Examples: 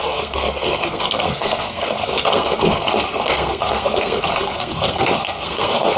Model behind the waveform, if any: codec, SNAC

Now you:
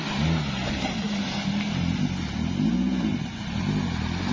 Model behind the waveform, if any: none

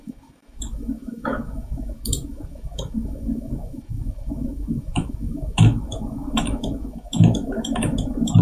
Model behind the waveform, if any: autoencoder, DAC-VAE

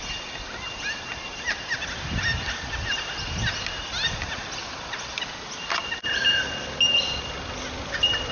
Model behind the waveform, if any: none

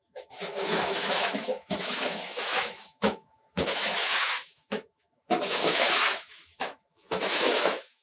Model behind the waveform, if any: autoencoder, DAC-VAE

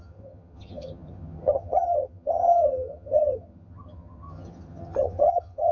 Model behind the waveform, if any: vocoder, HiFi-GAN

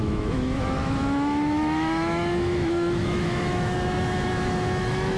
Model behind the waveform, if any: autoencoder, DAC-VAE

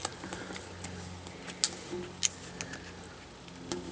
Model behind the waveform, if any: none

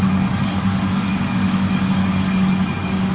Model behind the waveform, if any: codec, DAC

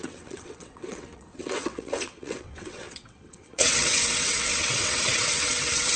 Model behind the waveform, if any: vocoder, WaveNeXt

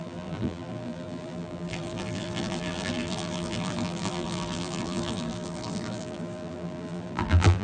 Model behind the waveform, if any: vocoder, BigVGAN v2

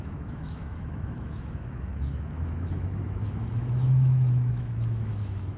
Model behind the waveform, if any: autoencoder, DAC-VAE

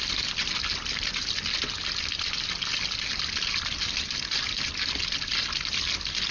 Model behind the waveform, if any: none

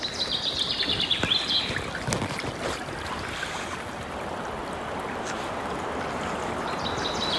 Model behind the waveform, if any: none